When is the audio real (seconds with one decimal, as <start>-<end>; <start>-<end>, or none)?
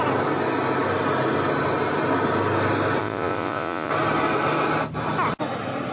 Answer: 0.0-3.0; 3.9-5.9